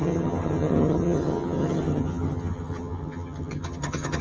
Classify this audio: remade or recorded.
remade